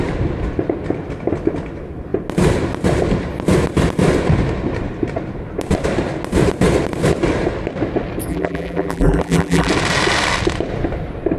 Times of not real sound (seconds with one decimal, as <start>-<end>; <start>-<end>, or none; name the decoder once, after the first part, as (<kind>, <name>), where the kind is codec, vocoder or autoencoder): 8.3-9.7 (vocoder, BigVGAN v2)